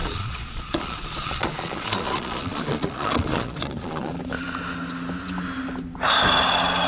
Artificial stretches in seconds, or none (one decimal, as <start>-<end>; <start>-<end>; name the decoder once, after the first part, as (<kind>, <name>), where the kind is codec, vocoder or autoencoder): 0.0-4.1 (vocoder, Vocos)